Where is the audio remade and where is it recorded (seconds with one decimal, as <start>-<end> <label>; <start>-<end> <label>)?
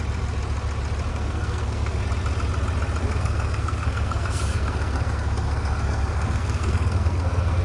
0.0-1.1 recorded; 1.1-2.0 remade; 2.0-3.0 recorded; 3.0-7.6 remade